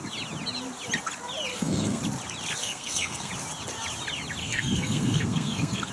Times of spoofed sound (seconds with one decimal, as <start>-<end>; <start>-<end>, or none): 1.5-2.0; 2.6-3.3; 4.4-5.9